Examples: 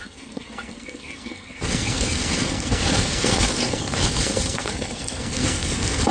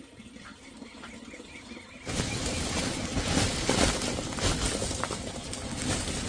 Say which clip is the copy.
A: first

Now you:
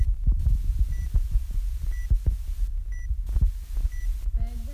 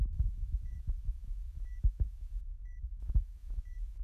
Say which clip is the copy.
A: second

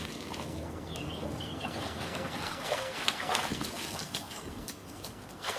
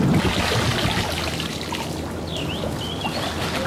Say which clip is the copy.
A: first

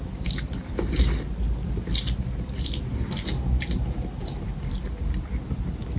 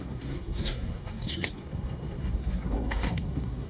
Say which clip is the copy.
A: second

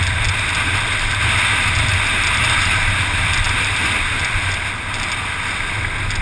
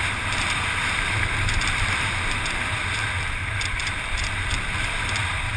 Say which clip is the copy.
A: second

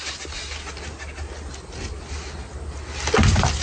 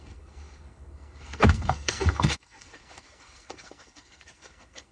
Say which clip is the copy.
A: second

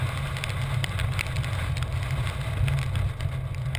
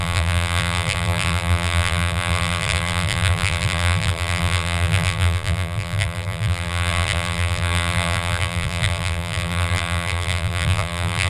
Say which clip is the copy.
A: second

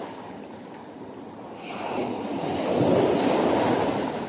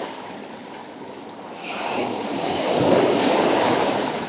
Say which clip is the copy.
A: second